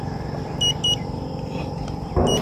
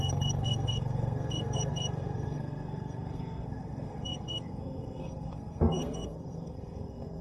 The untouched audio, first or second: first